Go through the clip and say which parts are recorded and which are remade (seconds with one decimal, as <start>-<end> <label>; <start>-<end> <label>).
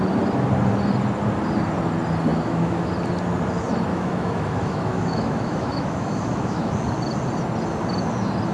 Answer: 0.0-2.3 recorded; 2.3-2.9 remade; 2.9-3.9 recorded; 3.9-6.7 remade; 6.7-8.5 recorded